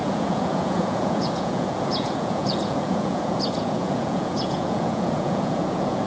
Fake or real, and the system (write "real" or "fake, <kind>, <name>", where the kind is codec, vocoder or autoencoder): fake, vocoder, Vocos